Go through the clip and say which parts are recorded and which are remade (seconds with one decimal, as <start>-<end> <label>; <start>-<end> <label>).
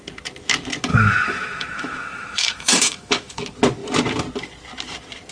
0.0-0.9 recorded; 0.9-3.4 remade; 3.4-5.3 recorded